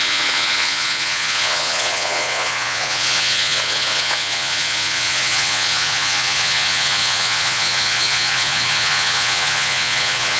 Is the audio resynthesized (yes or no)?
yes